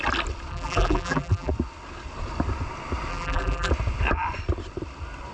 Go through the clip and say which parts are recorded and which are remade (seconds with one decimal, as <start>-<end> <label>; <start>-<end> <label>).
0.0-0.5 recorded; 0.5-1.5 remade; 1.5-3.1 recorded; 3.1-3.7 remade; 3.7-5.3 recorded